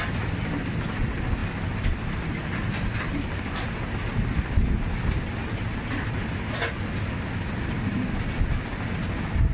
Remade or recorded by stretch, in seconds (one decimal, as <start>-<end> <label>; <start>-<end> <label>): 0.0-9.5 recorded